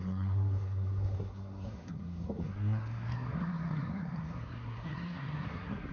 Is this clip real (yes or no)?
no